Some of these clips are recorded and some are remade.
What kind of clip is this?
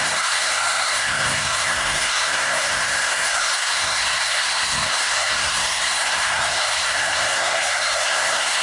remade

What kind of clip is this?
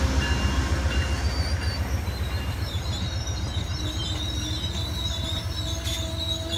recorded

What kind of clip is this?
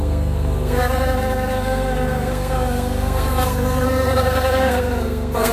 remade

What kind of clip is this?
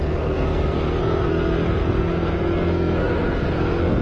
remade